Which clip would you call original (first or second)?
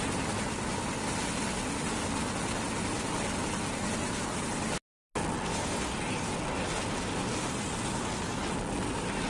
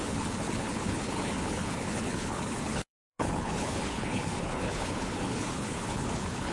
first